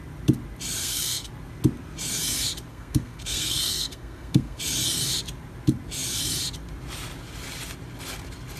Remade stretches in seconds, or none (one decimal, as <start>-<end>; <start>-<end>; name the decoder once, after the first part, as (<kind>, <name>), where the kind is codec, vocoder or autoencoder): 0.8-1.3 (codec, SNAC); 2.7-4.6